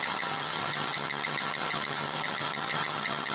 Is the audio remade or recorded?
remade